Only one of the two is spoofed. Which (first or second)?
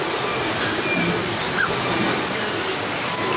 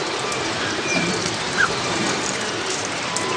second